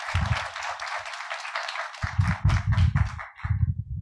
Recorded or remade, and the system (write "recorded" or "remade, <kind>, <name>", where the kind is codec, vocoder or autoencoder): recorded